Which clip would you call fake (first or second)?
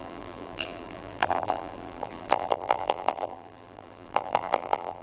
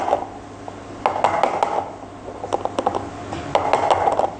first